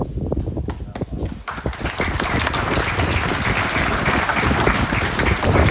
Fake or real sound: real